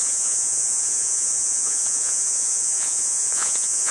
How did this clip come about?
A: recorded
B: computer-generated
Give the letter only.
B